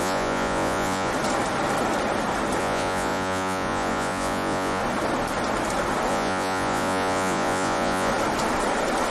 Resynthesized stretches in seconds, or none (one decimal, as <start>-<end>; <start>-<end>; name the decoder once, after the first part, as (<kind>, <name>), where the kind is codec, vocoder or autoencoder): 0.0-1.1 (vocoder, Vocos); 2.6-4.8; 6.1-8.1